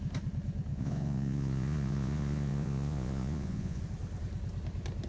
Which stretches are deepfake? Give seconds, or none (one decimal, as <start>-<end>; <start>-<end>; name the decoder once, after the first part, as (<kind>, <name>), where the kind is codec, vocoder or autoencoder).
0.7-3.8 (vocoder, Vocos)

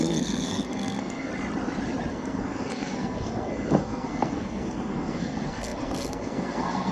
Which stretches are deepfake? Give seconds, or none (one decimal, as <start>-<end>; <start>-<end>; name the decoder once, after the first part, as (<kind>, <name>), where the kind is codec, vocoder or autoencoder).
0.0-1.3 (codec, SNAC); 2.1-6.9